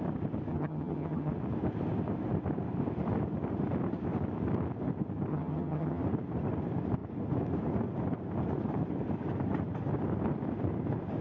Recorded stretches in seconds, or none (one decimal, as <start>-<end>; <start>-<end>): 0.0-0.5; 1.3-5.3; 6.0-11.2